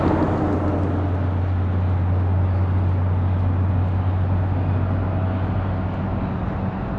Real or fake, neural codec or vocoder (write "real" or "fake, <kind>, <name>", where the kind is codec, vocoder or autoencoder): real